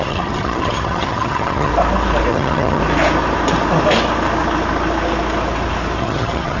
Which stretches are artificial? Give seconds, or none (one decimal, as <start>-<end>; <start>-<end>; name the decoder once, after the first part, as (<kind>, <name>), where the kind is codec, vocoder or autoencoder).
0.0-1.7 (vocoder, HiFi-GAN); 2.3-2.8; 6.0-6.6